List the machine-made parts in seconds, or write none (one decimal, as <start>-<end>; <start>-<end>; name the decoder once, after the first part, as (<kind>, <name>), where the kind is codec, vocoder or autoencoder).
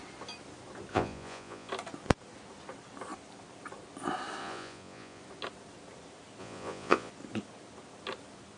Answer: 0.9-1.7 (vocoder, Vocos); 4.4-5.2; 6.4-7.1